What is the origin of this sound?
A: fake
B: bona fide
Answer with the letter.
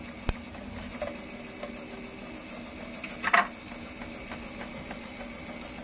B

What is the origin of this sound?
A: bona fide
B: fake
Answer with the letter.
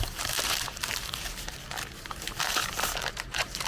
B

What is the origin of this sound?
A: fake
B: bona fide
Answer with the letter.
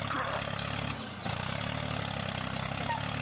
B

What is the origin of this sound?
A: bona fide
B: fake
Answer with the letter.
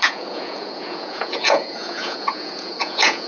B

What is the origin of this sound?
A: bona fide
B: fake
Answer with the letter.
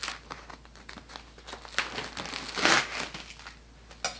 A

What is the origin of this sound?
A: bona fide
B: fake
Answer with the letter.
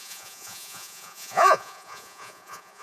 B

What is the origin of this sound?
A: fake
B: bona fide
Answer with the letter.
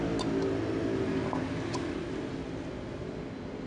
B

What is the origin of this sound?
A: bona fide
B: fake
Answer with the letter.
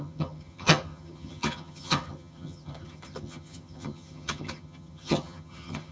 B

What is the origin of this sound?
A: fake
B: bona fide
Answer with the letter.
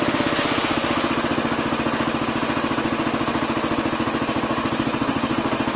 B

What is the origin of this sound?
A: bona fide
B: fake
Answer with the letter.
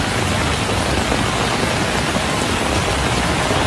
A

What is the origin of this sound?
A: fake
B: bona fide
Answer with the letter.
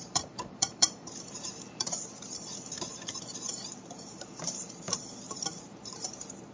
A